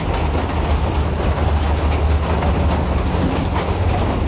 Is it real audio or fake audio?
real